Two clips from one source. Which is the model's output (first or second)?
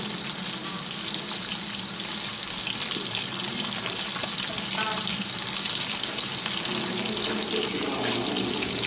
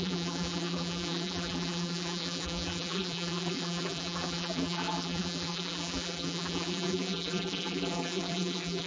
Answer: second